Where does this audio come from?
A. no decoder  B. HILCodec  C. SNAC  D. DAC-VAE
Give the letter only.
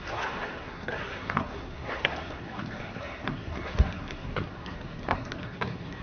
C